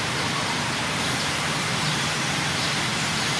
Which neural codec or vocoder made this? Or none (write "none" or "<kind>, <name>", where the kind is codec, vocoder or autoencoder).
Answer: vocoder, BigVGAN v2